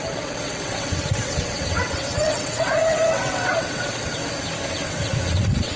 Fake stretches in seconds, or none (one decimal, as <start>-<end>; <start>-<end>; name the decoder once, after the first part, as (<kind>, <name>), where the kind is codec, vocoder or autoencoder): 0.0-4.2 (vocoder, WaveNeXt); 4.7-5.8